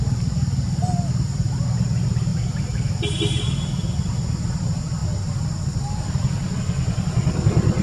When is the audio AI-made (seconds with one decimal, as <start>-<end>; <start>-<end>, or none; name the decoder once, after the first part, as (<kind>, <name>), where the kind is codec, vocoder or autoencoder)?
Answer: none